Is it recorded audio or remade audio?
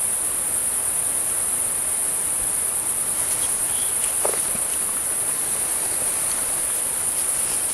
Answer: recorded